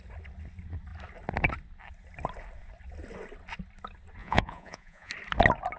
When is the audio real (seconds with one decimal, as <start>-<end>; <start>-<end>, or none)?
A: 0.0-4.2; 5.1-5.8